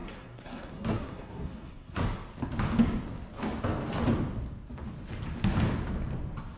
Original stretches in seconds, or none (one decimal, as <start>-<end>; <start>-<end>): 2.0-6.6